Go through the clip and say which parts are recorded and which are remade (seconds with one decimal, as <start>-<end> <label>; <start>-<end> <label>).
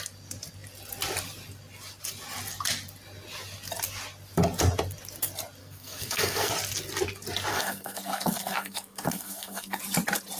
0.0-5.6 recorded; 5.6-6.5 remade; 6.5-7.5 recorded; 7.5-9.8 remade; 9.8-10.4 recorded